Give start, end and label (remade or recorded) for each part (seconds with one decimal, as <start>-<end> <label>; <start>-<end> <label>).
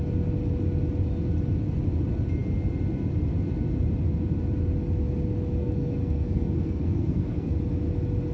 0.0-5.6 recorded; 5.6-7.6 remade; 7.6-8.3 recorded